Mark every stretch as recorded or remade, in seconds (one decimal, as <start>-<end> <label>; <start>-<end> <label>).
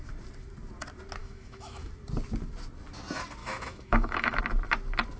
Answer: 0.0-1.2 recorded; 1.2-1.9 remade; 1.9-3.4 recorded; 3.4-4.4 remade; 4.4-5.2 recorded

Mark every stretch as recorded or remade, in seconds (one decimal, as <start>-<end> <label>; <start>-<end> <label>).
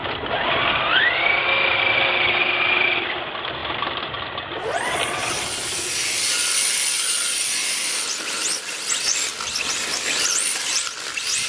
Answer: 0.0-11.5 recorded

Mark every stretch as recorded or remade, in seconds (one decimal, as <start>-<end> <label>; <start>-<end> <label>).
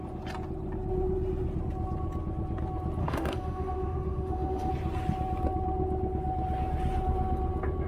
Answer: 0.0-3.0 recorded; 3.0-4.7 remade; 4.7-7.9 recorded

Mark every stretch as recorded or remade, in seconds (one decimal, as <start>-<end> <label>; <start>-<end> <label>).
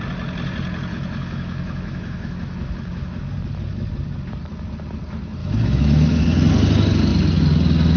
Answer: 0.0-0.9 recorded; 0.9-3.2 remade; 3.2-5.4 recorded; 5.4-6.2 remade; 6.2-8.0 recorded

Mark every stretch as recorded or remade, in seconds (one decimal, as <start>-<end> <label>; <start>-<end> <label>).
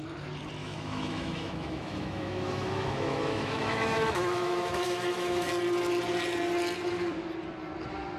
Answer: 0.0-0.6 recorded; 0.6-5.5 remade; 5.5-8.2 recorded